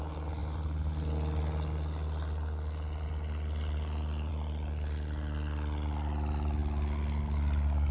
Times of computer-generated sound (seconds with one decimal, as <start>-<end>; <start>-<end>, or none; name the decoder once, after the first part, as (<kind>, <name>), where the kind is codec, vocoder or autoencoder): none